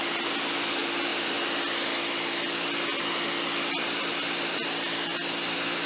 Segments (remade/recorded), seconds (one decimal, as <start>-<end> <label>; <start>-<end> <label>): 0.0-5.9 recorded